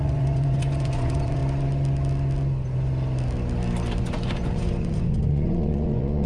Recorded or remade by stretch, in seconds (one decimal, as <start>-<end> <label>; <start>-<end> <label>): 0.0-1.4 remade; 1.4-4.0 recorded; 4.0-6.3 remade